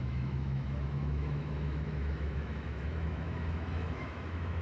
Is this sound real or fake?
fake